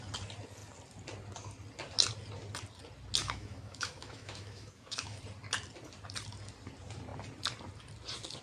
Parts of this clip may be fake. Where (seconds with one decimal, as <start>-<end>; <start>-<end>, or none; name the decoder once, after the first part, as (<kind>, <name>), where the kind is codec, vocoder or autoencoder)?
3.2-5.2 (autoencoder, DAC-VAE)